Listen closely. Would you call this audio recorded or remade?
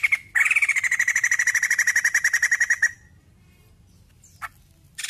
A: recorded